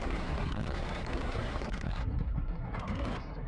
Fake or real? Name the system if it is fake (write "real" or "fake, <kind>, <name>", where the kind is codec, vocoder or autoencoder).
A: fake, codec, SNAC